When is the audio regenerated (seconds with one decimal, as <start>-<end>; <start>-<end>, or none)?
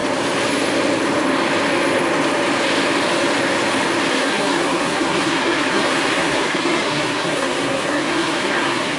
4.1-9.0